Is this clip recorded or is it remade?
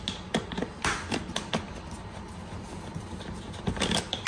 recorded